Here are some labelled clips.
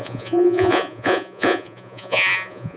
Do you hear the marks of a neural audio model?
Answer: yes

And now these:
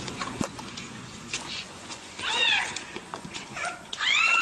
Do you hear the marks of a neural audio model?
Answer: yes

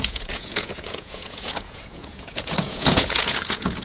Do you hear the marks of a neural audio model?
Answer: yes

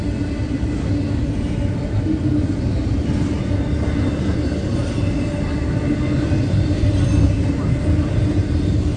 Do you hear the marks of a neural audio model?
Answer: no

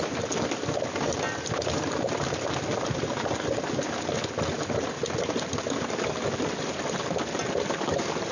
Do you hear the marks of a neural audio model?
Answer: no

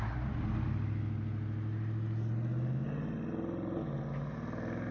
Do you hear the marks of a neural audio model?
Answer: no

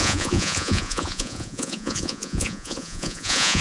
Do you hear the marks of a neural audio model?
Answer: yes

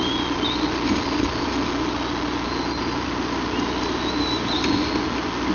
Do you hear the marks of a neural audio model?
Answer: no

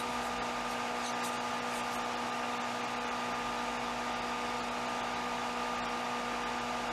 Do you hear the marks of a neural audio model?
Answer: no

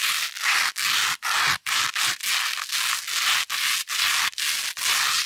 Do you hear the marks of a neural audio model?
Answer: no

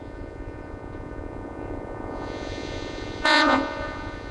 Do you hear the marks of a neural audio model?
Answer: yes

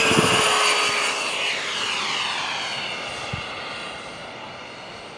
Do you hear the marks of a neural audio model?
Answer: no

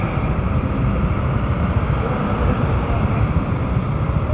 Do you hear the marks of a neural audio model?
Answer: no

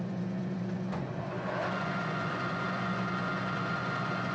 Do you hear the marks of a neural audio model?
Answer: yes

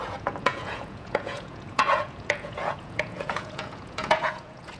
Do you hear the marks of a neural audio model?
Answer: yes